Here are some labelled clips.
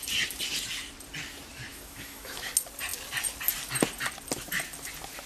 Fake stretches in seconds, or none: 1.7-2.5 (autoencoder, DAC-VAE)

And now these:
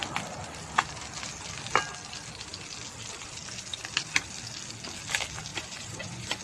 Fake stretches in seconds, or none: 5.5-6.4 (vocoder, Vocos)